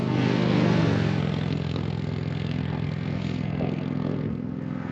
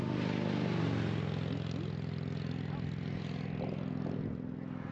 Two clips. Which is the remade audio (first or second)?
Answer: first